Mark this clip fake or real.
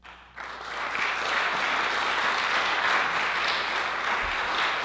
real